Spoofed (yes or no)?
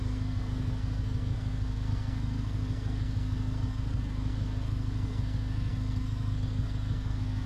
yes